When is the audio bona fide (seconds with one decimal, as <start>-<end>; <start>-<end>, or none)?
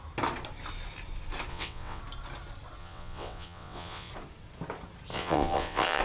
0.0-1.5; 2.0-2.8; 4.1-5.1